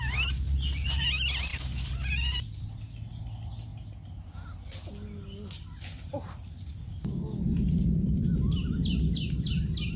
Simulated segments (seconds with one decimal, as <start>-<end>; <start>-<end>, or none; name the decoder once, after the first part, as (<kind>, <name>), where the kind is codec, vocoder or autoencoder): 1.5-2.7 (vocoder, BigVGAN v2)